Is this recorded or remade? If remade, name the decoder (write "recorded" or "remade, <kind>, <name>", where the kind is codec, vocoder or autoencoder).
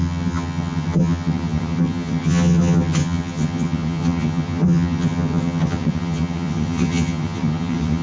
remade, vocoder, HiFi-GAN